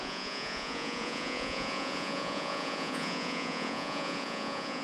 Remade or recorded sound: remade